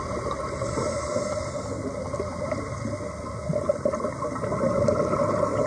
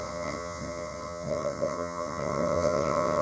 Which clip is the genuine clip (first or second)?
first